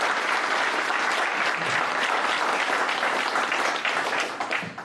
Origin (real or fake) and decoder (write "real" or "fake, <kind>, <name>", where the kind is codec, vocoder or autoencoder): real